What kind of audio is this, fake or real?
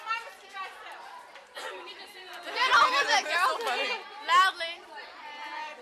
real